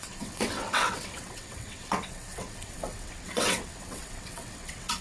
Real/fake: fake